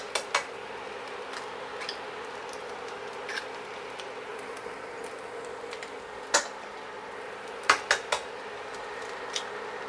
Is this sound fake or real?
real